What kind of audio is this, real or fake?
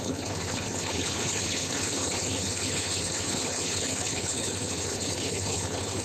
fake